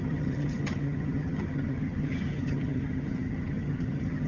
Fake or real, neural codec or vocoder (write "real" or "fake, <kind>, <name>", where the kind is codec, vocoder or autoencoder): fake, vocoder, HiFi-GAN